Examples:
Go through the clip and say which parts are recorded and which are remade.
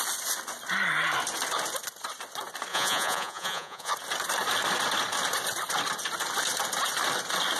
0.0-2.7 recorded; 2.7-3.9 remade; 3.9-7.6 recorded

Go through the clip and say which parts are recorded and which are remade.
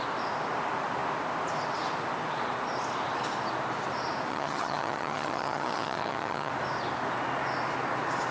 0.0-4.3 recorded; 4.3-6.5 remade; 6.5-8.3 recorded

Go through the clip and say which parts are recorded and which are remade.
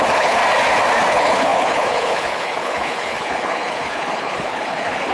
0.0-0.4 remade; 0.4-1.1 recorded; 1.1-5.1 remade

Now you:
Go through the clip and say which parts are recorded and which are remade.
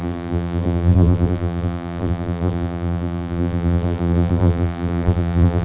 0.0-5.6 remade